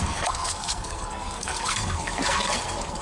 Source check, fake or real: fake